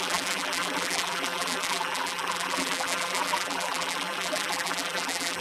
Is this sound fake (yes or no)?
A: yes